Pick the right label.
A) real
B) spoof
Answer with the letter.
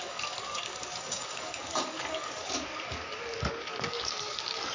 B